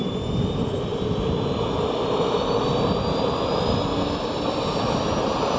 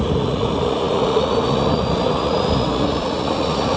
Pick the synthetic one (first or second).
second